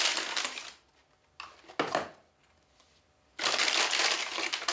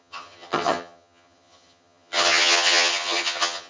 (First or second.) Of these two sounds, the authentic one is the first